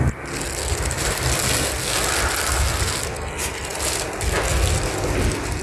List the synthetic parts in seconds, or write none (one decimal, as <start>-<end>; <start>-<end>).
none